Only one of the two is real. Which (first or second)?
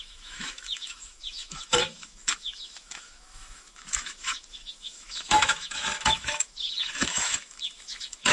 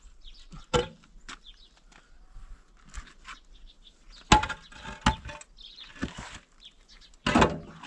second